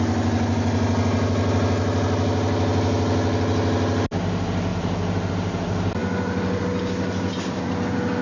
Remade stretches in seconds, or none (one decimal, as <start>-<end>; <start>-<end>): none